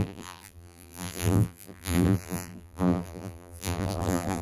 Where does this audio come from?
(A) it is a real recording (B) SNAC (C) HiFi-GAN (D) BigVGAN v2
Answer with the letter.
D